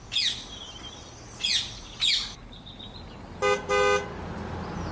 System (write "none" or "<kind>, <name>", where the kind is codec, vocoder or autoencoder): none